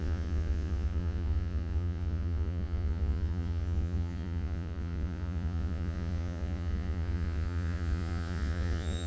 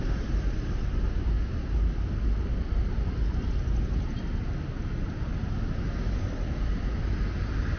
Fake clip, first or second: first